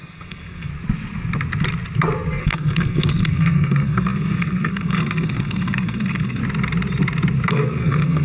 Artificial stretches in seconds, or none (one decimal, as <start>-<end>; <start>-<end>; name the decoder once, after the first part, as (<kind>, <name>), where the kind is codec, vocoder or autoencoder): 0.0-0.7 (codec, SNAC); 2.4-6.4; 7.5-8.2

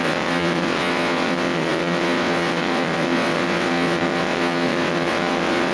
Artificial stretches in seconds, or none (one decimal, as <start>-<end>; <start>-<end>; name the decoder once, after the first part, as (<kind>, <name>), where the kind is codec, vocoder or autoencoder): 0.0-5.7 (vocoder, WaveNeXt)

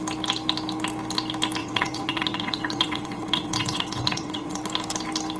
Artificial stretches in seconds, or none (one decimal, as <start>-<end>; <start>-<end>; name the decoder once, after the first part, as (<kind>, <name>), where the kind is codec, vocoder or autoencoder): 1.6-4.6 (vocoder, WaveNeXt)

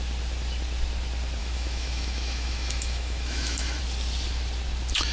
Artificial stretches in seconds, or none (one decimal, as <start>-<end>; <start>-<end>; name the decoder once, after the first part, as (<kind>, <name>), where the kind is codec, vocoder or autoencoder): 1.4-3.8 (autoencoder, DAC-VAE)

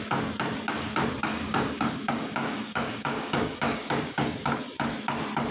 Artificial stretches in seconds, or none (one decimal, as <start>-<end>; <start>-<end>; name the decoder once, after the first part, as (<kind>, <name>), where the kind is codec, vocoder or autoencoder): 1.3-4.6 (codec, DAC)

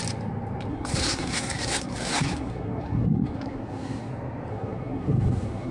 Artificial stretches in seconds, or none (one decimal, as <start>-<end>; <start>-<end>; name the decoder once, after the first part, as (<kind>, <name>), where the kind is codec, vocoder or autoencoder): 0.7-4.1 (codec, SNAC); 4.5-5.7

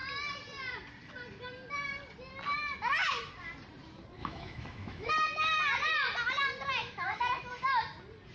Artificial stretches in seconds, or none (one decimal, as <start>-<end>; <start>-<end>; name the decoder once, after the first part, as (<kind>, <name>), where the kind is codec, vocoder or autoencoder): 4.2-5.1 (autoencoder, DAC-VAE); 6.8-7.5

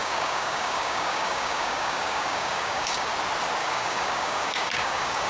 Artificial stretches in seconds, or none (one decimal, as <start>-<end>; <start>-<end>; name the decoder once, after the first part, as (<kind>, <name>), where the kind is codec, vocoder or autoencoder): 0.0-3.1 (codec, DAC); 3.6-5.3